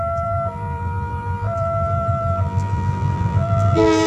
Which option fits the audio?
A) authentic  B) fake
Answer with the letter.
B